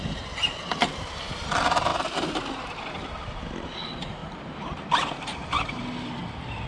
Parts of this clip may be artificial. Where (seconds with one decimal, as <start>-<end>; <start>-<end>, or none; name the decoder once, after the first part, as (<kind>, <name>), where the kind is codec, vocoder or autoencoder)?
4.2-6.2 (vocoder, BigVGAN v2)